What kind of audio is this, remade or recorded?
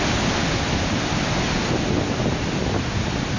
recorded